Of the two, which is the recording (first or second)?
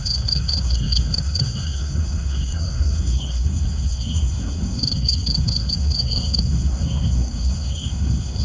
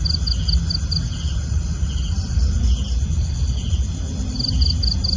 second